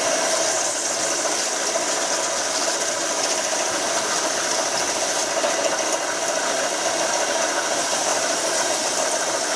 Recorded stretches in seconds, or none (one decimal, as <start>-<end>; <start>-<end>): none